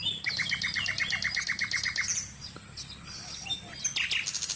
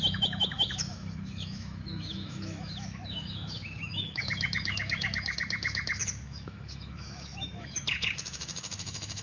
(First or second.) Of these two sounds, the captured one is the first